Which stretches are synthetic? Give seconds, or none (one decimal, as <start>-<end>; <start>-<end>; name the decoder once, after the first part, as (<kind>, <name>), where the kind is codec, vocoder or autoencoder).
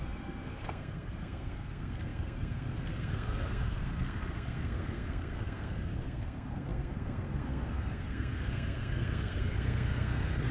0.0-10.5 (codec, SNAC)